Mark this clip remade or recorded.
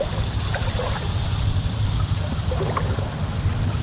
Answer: remade